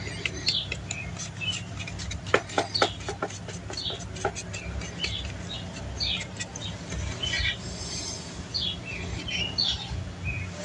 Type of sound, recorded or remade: recorded